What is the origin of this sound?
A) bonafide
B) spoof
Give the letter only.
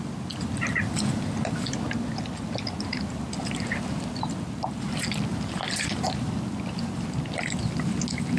A